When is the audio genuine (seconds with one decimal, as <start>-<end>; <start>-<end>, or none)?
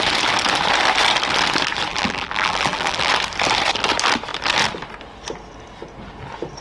0.0-1.9; 3.1-6.6